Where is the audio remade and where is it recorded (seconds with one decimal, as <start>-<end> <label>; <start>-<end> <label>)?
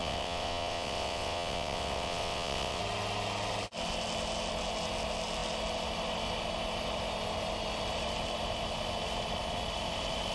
0.0-2.8 remade; 2.8-10.3 recorded